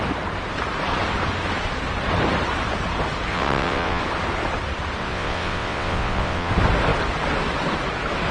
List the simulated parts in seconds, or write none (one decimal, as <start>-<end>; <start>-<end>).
3.3-4.0; 5.0-6.5